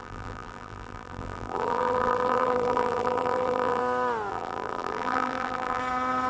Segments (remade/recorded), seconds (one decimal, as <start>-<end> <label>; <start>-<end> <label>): 0.0-3.8 remade; 3.8-4.3 recorded; 4.3-5.8 remade; 5.8-6.3 recorded